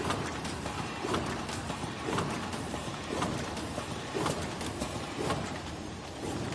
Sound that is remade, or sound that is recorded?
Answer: remade